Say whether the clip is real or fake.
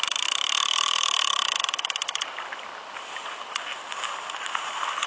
real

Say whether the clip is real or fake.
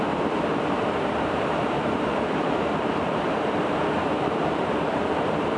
fake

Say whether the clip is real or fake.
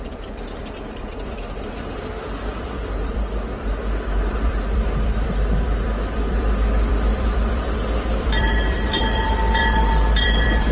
fake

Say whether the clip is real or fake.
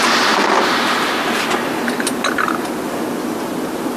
real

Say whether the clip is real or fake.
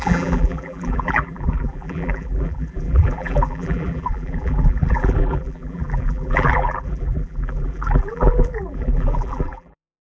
fake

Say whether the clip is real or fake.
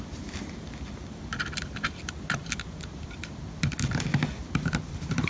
fake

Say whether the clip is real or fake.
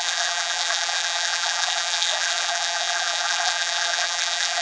fake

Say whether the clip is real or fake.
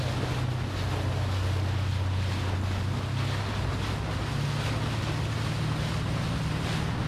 real